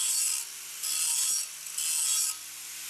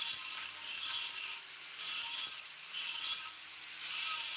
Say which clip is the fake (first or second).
second